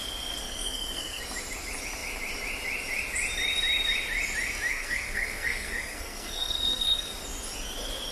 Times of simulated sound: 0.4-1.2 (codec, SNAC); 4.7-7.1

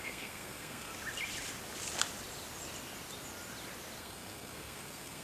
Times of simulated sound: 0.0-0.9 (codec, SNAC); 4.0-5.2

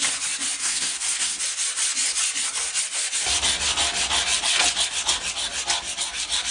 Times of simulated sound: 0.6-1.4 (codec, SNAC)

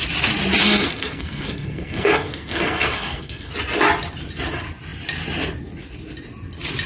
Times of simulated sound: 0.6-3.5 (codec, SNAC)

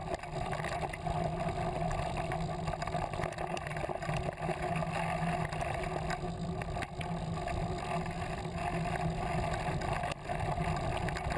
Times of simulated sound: none

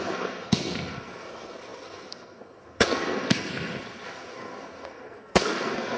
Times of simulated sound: 0.0-6.0 (codec, SNAC)